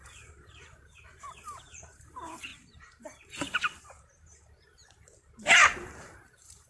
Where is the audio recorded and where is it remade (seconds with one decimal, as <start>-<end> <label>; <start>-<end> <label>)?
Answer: 0.0-4.8 remade; 4.8-5.9 recorded; 5.9-6.7 remade